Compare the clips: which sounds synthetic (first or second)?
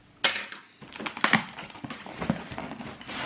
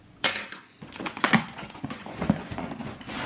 second